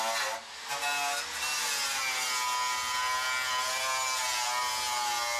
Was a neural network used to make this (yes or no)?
no